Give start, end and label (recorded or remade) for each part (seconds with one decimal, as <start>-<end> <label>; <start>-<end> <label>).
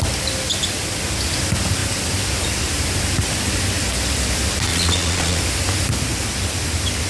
0.0-4.7 recorded; 4.7-5.4 remade; 5.4-7.1 recorded